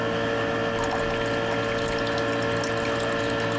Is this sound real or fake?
real